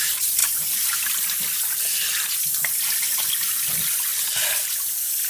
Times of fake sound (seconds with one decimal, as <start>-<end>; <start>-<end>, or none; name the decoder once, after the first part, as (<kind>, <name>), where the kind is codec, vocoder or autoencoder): 4.1-5.3 (vocoder, BigVGAN v2)